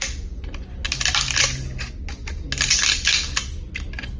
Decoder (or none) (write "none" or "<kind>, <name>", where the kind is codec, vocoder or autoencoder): none